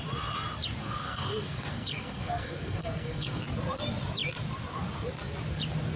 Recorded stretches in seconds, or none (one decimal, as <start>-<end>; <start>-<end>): 0.0-0.8; 3.4-6.0